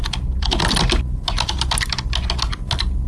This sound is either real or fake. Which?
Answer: real